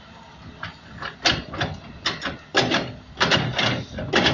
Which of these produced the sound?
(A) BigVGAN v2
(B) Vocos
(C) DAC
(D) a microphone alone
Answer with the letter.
D